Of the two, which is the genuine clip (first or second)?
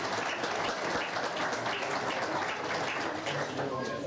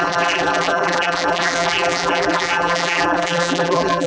first